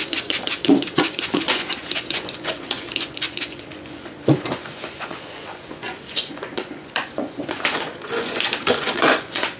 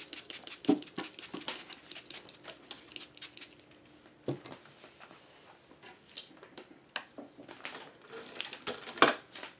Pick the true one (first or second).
second